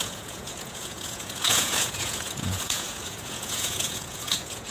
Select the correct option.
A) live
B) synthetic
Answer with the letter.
B